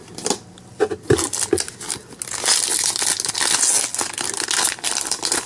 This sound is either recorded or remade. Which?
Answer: recorded